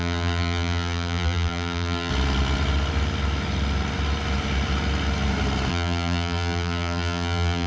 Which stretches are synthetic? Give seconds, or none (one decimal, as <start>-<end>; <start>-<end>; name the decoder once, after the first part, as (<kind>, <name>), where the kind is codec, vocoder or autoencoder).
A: 0.0-2.1 (vocoder, BigVGAN v2); 5.7-7.7